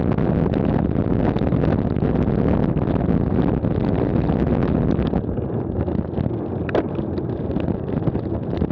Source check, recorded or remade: recorded